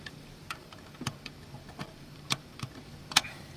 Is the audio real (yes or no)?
no